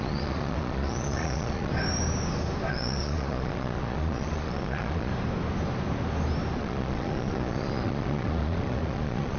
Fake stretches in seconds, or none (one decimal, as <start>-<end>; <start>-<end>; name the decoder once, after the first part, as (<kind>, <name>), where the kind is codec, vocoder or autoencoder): 0.0-1.7 (vocoder, Vocos); 2.7-5.1; 6.6-9.4